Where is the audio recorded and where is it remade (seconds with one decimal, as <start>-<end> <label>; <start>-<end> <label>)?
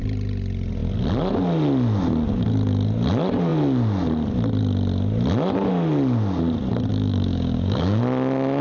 0.0-6.9 recorded; 6.9-8.0 remade; 8.0-8.6 recorded